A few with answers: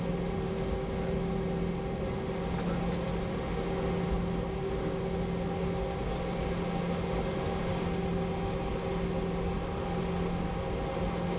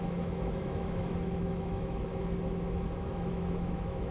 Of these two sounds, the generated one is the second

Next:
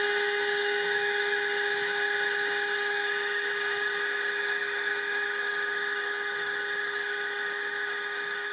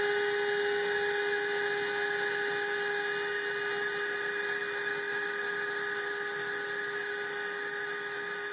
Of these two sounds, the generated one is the first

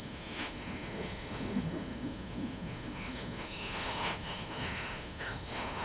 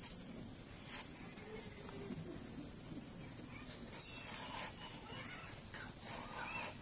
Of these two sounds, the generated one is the first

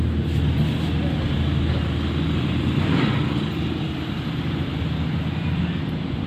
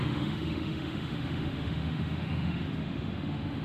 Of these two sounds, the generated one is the second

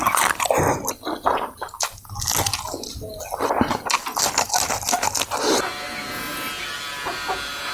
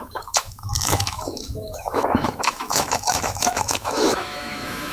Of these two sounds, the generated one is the second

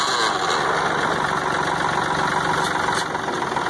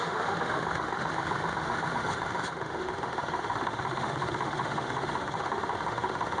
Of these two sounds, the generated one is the second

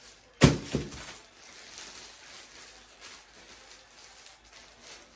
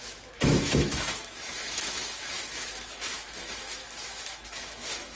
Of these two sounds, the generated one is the second